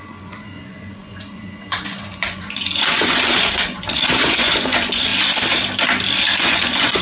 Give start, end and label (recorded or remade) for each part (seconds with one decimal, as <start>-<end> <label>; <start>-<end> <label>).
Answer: 0.0-5.1 remade; 5.1-6.4 recorded; 6.4-7.0 remade